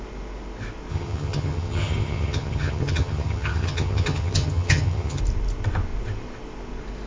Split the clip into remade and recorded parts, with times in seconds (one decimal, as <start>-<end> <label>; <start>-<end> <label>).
0.0-0.9 recorded; 0.9-5.2 remade; 5.2-7.1 recorded